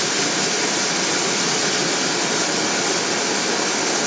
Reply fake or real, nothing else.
real